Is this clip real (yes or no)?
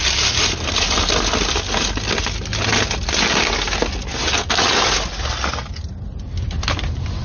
yes